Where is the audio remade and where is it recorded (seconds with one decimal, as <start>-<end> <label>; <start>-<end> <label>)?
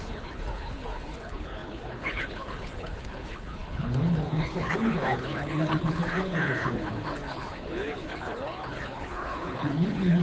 0.0-10.2 remade